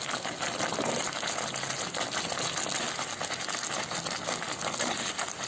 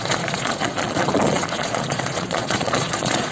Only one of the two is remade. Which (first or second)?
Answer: second